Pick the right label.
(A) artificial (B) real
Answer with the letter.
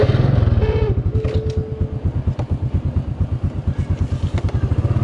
B